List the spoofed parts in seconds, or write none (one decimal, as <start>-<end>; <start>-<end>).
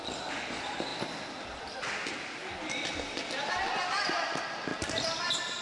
none